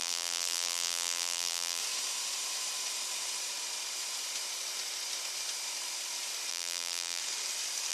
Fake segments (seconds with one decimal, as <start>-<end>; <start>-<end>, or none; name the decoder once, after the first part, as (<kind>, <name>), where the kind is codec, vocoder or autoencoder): 0.0-1.8 (vocoder, BigVGAN v2); 6.5-7.2